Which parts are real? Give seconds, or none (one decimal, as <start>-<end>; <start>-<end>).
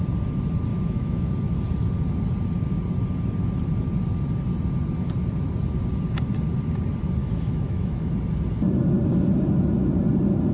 0.0-0.7; 1.3-7.2; 8.1-10.5